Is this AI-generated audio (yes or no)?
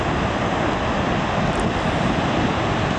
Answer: no